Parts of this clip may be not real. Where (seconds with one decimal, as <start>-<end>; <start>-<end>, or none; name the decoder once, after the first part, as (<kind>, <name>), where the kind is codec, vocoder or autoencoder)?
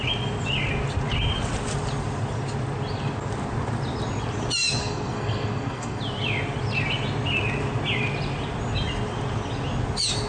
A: 4.8-6.0 (codec, SNAC)